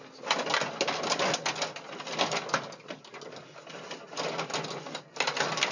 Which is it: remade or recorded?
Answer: recorded